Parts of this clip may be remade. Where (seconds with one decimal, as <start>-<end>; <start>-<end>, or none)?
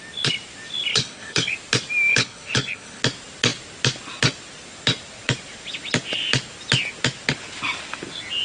0.9-1.5; 2.1-3.0